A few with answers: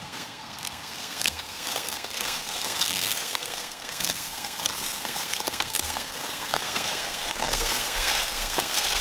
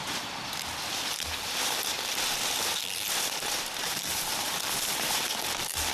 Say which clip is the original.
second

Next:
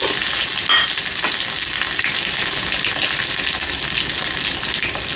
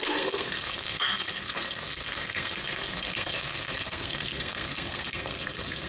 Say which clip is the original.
first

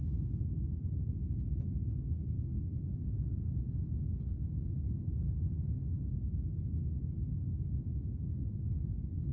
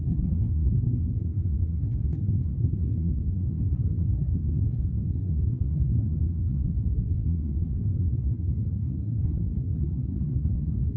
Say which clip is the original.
first